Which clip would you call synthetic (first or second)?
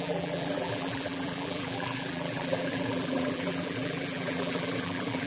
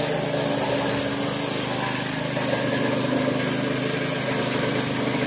first